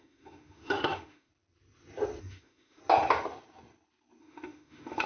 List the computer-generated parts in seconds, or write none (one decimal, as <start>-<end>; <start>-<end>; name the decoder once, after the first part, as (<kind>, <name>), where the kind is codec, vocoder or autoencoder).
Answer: 0.0-1.3 (autoencoder, DAC-VAE); 2.2-2.8; 4.2-5.1